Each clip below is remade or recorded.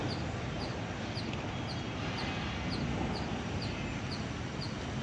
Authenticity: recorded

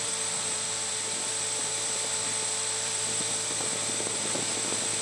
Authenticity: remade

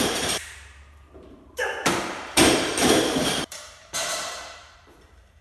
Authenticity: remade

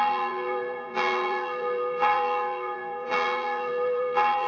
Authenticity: remade